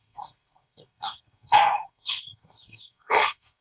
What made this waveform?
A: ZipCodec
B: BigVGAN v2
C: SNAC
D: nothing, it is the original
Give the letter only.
C